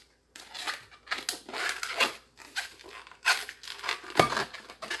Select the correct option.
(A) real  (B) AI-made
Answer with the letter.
A